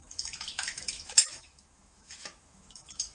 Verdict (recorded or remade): remade